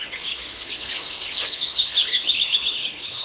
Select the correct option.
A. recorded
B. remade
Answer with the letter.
B